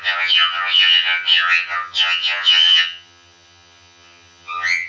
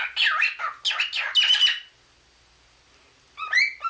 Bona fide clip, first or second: second